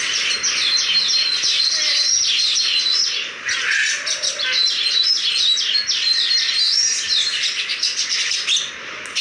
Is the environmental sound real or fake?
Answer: real